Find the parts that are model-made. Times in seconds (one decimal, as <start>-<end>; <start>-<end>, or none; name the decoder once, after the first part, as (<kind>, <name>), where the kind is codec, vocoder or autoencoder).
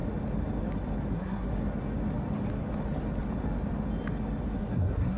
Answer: 1.1-1.5 (codec, SNAC); 4.6-5.2